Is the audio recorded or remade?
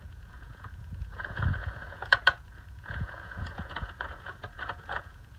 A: remade